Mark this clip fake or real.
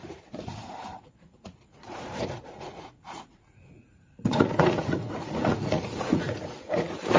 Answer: fake